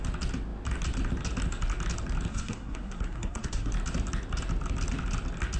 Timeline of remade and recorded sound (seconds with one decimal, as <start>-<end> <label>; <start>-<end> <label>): 0.0-2.3 recorded; 2.3-3.7 remade; 3.7-5.6 recorded